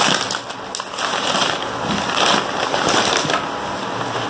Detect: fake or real real